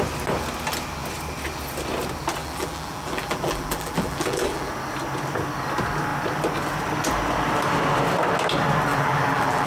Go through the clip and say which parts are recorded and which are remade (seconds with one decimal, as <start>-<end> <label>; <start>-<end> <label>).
0.0-2.4 recorded; 2.4-4.7 remade; 4.7-8.9 recorded; 8.9-9.7 remade